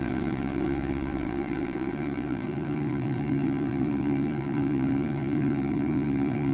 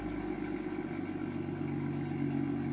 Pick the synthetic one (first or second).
first